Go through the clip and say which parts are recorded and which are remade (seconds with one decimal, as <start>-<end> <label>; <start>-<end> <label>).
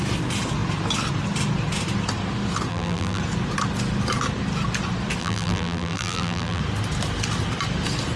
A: 0.0-2.7 recorded; 2.7-3.2 remade; 3.2-5.2 recorded; 5.2-6.6 remade; 6.6-8.2 recorded